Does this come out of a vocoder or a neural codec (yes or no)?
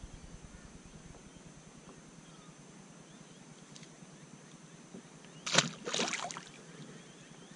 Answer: no